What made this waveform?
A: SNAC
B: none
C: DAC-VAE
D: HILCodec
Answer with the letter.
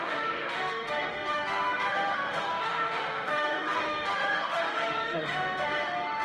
C